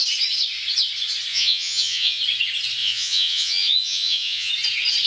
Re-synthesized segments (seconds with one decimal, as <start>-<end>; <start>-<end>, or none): 1.3-2.2; 2.8-4.5